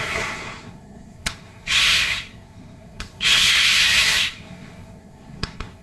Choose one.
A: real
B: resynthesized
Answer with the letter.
B